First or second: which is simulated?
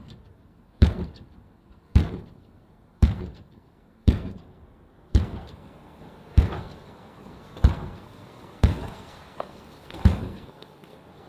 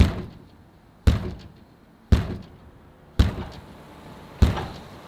first